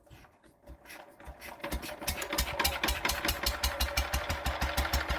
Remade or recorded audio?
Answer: remade